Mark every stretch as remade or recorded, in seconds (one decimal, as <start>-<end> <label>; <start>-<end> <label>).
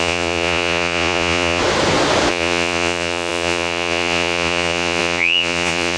0.0-1.6 remade; 1.6-2.3 recorded; 2.3-6.0 remade